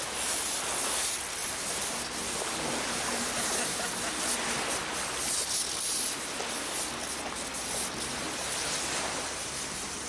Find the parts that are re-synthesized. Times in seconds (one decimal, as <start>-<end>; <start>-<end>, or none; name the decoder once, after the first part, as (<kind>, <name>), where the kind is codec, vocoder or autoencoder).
none